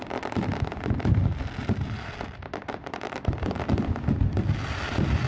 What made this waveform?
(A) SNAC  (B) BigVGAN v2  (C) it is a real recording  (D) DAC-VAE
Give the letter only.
B